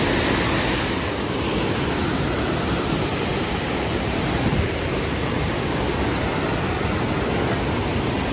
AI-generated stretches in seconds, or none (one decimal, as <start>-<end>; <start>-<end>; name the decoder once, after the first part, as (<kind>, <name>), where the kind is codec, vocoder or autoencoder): 3.1-5.7 (vocoder, BigVGAN v2)